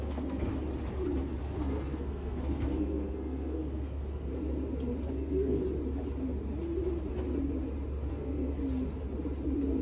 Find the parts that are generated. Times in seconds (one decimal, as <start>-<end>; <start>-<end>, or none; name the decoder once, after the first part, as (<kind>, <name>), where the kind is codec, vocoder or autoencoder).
0.0-0.5 (codec, SNAC); 1.4-4.3; 5.1-5.6; 8.1-8.6

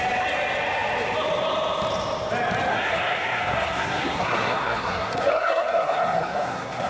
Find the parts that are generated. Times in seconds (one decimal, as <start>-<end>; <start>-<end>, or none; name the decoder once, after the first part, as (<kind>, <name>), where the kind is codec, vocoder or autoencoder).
2.7-6.9 (codec, SNAC)